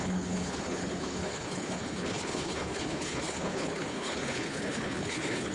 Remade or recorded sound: remade